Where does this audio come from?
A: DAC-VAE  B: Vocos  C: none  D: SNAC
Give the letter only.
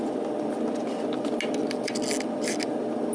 C